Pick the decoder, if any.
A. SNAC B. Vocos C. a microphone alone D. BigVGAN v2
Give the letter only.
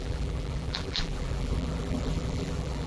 D